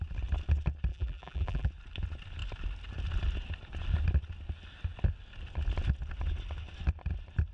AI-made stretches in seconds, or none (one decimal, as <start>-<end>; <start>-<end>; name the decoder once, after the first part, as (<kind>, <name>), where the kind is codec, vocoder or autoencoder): 0.9-1.7 (vocoder, BigVGAN v2)